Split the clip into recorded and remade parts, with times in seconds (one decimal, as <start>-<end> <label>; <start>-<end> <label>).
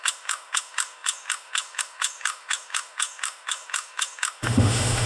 0.0-5.1 remade